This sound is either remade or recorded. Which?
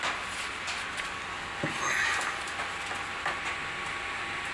recorded